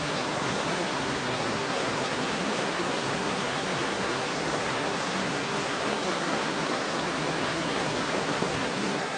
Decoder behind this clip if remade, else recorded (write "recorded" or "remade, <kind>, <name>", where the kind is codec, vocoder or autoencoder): remade, codec, SNAC